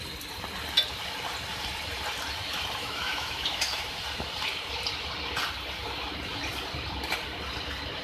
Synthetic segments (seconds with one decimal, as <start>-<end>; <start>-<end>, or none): 2.8-3.9